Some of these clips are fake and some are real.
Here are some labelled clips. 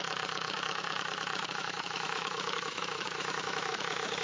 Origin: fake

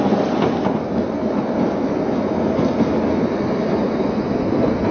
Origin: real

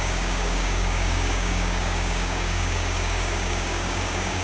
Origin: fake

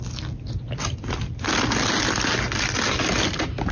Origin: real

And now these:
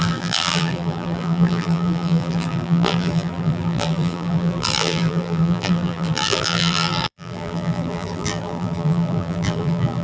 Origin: fake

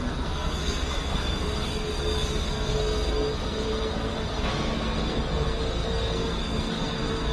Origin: fake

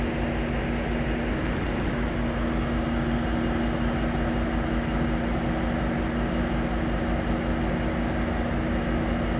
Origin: real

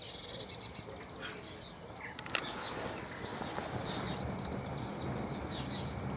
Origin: real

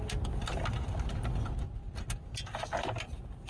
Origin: real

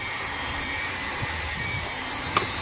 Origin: fake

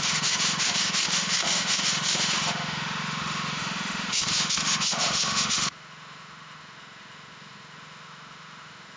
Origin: fake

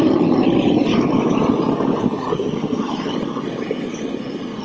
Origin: real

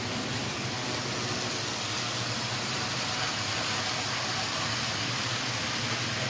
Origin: real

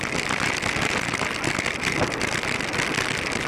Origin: real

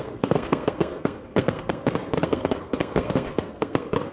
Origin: fake